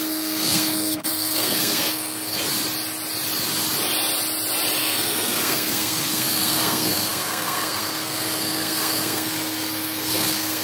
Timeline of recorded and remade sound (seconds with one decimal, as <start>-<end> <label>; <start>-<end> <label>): 0.0-2.4 remade; 2.4-4.8 recorded; 4.8-10.6 remade